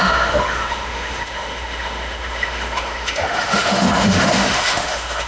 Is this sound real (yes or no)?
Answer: no